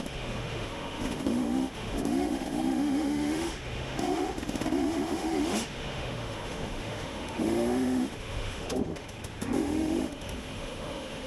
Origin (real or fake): fake